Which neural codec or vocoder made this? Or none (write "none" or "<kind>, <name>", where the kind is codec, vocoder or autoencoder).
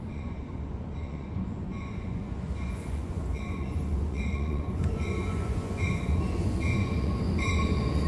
vocoder, Vocos